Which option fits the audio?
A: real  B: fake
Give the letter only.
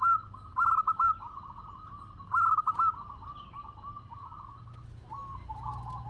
A